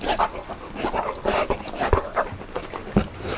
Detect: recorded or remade recorded